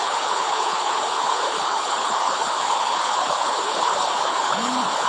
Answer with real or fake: fake